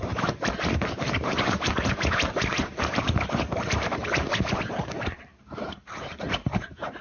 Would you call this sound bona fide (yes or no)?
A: no